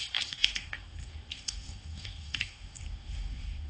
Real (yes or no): no